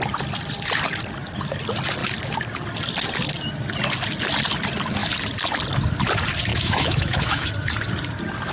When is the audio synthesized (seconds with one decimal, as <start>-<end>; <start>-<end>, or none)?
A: 6.5-7.5